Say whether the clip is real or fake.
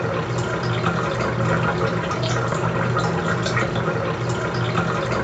real